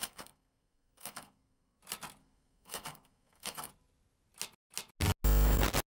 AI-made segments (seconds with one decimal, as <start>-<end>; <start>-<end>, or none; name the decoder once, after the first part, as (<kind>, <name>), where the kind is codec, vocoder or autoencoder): 0.0-1.8 (codec, SNAC); 2.2-3.7